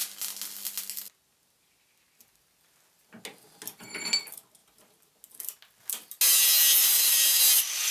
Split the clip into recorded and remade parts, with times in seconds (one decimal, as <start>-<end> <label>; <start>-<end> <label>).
0.0-6.8 recorded; 6.8-7.4 remade; 7.4-7.9 recorded

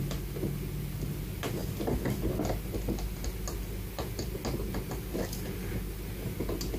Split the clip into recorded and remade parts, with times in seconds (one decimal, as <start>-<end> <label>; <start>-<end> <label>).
0.0-6.8 recorded

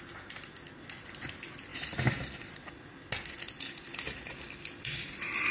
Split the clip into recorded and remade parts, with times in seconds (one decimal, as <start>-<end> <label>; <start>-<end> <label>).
0.0-5.5 recorded

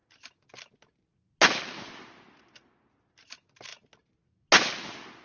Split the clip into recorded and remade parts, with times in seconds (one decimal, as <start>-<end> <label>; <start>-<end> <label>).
0.0-5.2 recorded

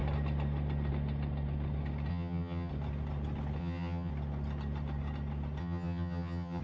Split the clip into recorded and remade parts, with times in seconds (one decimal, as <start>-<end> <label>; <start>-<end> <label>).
0.0-2.1 recorded; 2.1-2.7 remade; 2.7-3.6 recorded; 3.6-4.1 remade; 4.1-5.6 recorded; 5.6-6.6 remade

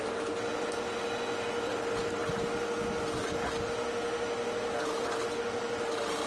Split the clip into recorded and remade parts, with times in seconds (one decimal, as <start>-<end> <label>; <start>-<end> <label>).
0.0-6.3 recorded

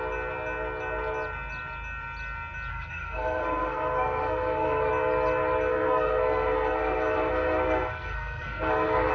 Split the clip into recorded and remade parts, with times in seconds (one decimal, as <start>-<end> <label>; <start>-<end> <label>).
0.0-2.7 recorded; 2.7-4.9 remade; 4.9-5.7 recorded; 5.7-9.1 remade